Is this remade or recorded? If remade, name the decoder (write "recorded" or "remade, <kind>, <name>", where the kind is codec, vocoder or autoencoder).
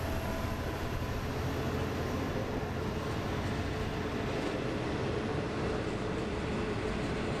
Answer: recorded